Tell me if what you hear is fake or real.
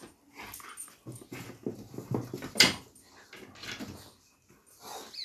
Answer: real